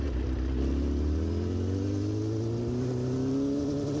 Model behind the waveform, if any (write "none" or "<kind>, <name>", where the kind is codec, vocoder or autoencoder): none